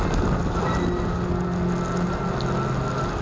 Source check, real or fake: real